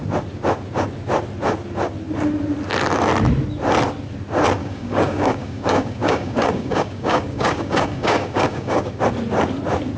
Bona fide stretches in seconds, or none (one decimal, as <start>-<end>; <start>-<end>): 0.0-4.6; 9.0-10.0